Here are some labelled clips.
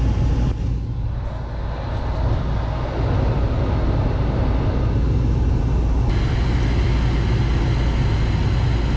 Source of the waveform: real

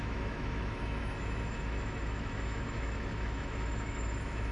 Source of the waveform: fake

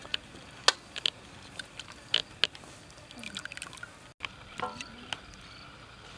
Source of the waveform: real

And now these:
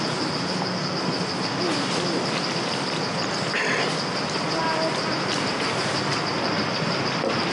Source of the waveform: real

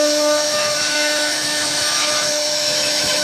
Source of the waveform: fake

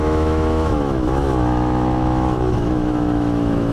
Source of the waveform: fake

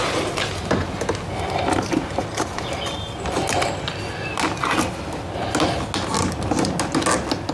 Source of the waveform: real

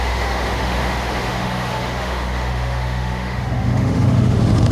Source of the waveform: fake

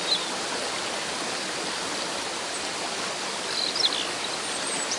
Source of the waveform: real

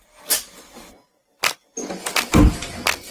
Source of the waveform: real